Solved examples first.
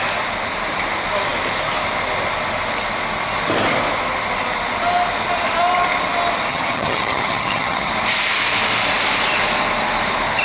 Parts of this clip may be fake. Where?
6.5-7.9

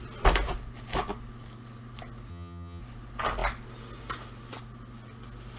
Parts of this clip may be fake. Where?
2.3-2.8